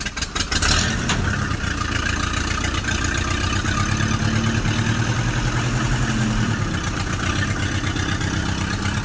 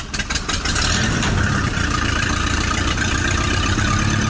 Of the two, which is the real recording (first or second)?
first